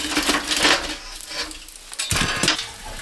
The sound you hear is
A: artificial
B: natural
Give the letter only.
B